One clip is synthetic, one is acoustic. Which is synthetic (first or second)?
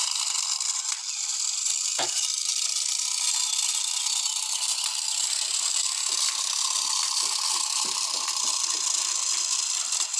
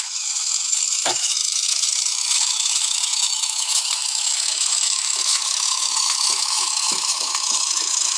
second